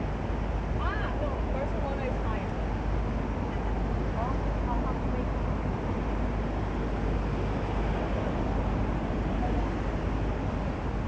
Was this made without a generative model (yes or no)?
yes